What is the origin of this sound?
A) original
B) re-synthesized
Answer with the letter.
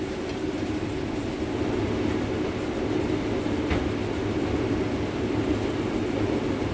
A